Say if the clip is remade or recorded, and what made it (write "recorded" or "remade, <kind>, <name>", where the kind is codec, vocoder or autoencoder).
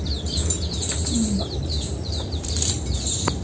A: remade, vocoder, BigVGAN v2